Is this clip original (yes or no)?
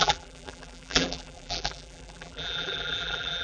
no